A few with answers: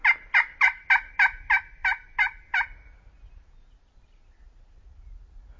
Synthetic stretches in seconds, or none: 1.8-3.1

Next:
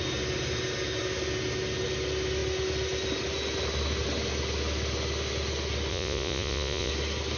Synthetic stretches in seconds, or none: 5.9-6.9

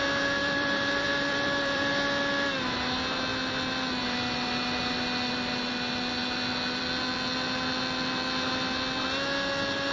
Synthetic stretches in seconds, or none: 0.4-1.9

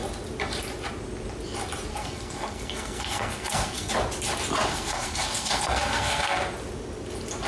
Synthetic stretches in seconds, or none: 1.9-3.9; 4.7-6.4